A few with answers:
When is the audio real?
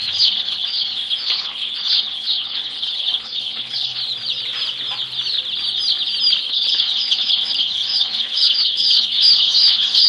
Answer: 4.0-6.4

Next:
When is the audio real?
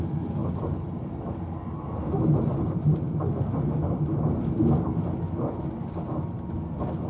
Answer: 0.0-7.1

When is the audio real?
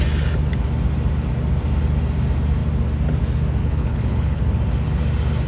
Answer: 0.0-3.6; 4.4-5.5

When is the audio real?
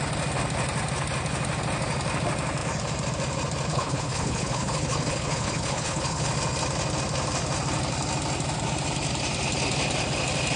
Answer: 0.0-3.7; 6.3-10.6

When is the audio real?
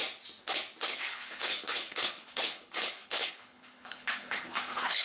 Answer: 0.0-0.9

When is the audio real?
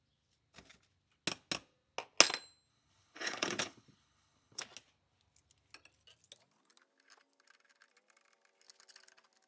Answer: 0.0-2.7; 4.6-9.5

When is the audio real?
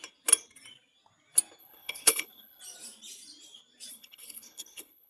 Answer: 0.0-1.6; 2.6-3.9